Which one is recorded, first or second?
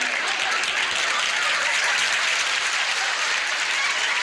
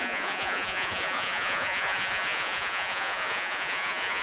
first